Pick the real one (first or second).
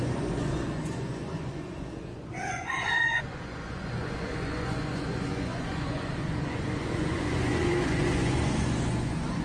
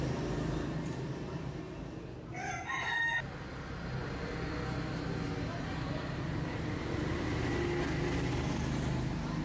second